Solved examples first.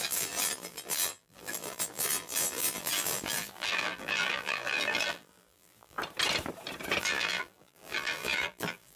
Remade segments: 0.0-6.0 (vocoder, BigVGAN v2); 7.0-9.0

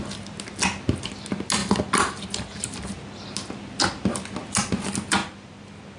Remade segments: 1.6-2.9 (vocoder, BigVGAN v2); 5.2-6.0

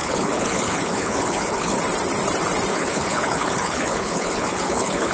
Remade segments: 0.0-1.8 (codec, HILCodec); 2.7-5.1

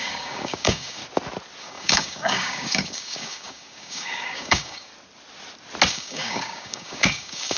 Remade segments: 0.0-1.0 (codec, DAC); 1.6-4.9; 5.9-7.6

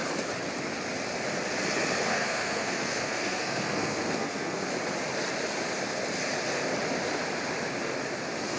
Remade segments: 2.1-4.6 (codec, SNAC)

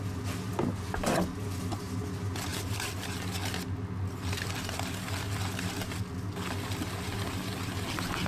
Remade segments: none

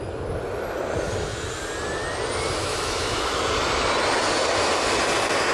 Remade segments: 2.6-3.4 (autoencoder, DAC-VAE)

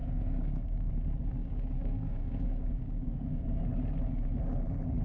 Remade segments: 0.0-0.9 (codec, DAC); 1.4-3.6